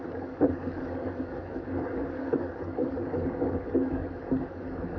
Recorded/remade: remade